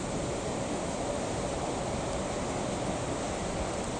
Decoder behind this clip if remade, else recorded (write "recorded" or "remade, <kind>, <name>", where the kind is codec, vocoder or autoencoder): recorded